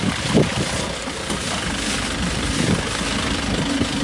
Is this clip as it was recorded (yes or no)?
yes